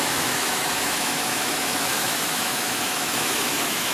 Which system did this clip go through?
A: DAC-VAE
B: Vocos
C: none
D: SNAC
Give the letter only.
A